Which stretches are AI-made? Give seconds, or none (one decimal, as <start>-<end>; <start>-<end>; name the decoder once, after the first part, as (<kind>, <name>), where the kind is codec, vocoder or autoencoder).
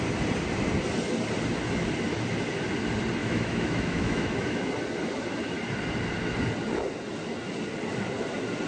3.2-4.7 (autoencoder, DAC-VAE)